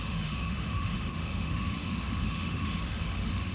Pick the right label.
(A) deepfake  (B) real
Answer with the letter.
A